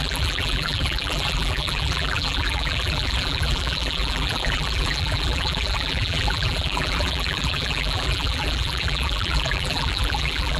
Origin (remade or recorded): remade